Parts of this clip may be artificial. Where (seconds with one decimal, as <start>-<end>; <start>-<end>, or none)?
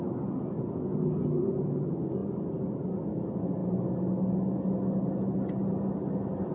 none